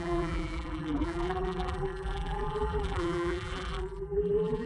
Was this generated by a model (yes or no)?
yes